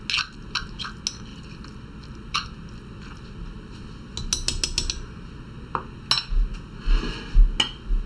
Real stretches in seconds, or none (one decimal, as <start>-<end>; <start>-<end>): 0.0-8.1